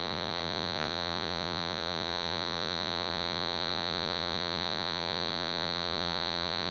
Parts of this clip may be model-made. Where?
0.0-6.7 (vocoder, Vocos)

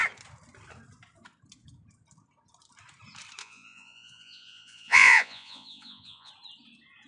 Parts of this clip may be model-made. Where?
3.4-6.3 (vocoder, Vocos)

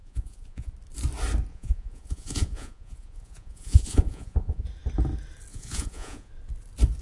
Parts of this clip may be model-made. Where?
0.0-0.7 (vocoder, Vocos); 1.5-4.6; 5.5-6.3

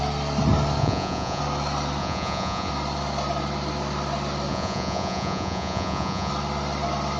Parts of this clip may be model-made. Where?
0.8-1.4 (vocoder, Vocos); 2.0-2.7; 4.5-6.3